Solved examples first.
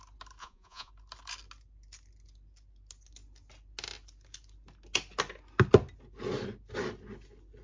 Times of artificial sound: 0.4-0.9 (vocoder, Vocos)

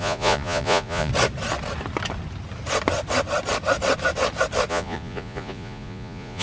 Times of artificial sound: 0.0-1.1 (vocoder, Vocos); 4.7-6.4

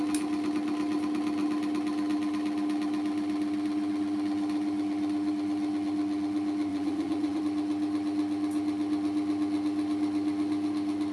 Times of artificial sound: 6.7-7.4 (vocoder, Vocos)

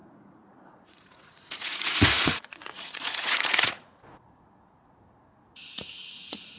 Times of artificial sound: 0.0-6.6 (vocoder, Vocos)

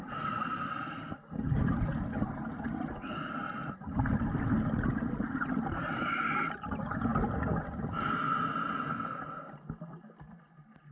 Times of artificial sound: none

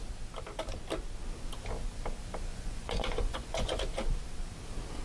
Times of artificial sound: 2.5-3.8 (vocoder, Vocos)

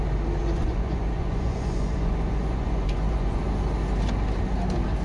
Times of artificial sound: 0.4-3.4 (vocoder, Vocos)

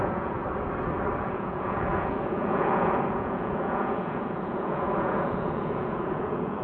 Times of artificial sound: 0.0-0.4 (vocoder, Vocos); 1.2-6.6